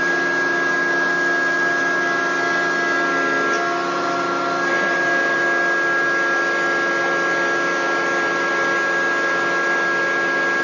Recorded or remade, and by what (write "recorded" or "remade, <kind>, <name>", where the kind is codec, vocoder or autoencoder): recorded